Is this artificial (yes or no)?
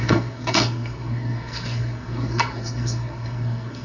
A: yes